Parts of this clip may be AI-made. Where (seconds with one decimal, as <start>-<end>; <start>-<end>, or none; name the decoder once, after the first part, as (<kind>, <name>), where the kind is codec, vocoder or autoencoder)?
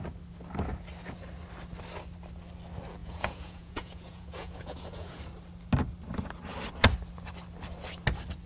3.0-5.2 (vocoder, Vocos)